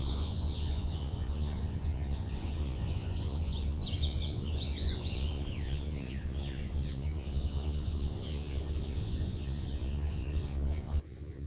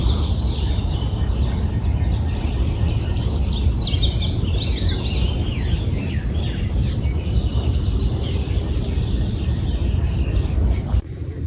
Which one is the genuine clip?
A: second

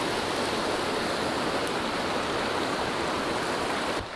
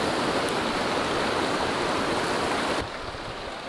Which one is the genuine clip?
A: first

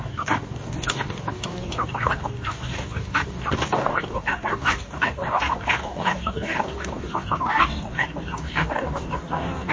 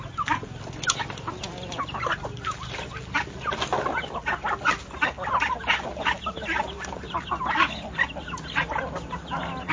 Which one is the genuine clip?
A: second